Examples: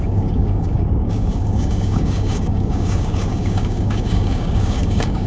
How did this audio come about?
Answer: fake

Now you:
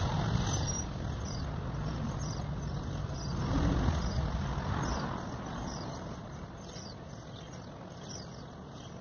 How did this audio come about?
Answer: real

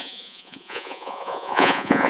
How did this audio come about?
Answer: fake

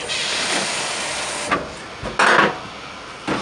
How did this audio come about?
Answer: real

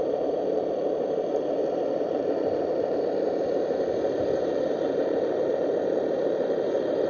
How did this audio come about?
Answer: fake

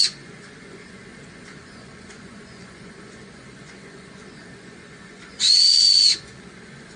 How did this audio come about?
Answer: fake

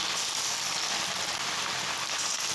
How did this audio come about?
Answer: fake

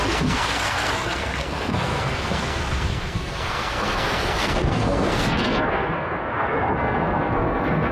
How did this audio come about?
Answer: fake